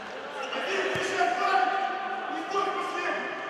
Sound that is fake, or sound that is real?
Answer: real